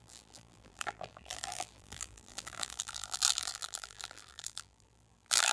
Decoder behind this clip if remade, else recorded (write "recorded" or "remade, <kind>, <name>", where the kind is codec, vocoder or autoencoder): remade, vocoder, BigVGAN v2